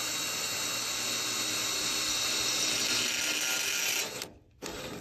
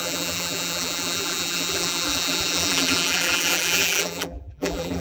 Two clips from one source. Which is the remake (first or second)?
second